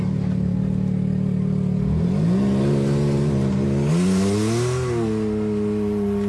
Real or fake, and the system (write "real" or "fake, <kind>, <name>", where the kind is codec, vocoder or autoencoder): real